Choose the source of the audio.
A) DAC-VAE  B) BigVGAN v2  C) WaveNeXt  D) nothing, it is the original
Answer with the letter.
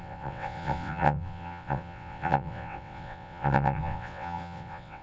C